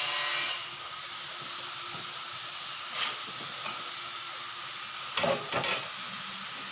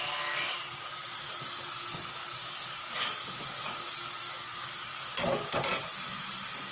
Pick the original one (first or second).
first